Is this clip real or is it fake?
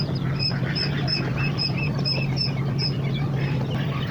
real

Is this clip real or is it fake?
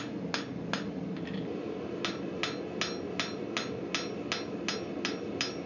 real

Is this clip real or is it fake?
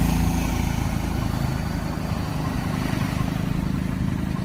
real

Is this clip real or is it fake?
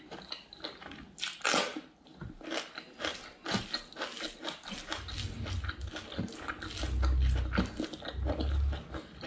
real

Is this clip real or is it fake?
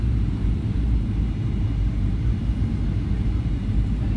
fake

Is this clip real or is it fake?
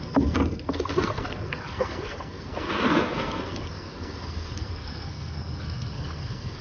fake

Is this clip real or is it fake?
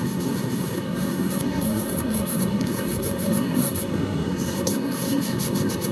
fake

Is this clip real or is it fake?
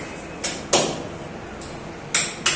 real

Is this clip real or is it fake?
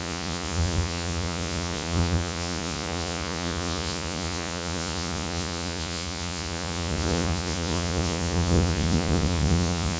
fake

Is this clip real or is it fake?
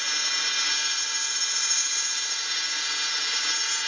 fake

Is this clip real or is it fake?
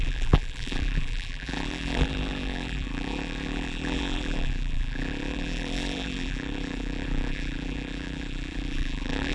fake